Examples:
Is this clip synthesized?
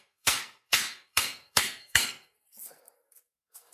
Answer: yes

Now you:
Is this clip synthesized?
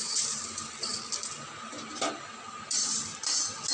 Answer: no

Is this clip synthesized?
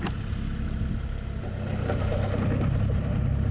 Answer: no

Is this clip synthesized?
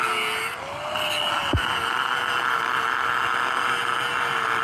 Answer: no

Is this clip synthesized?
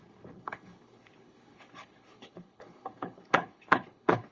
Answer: yes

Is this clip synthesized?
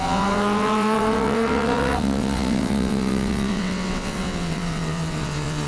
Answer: yes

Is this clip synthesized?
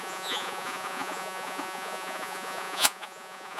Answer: yes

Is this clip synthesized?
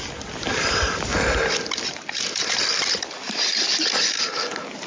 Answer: no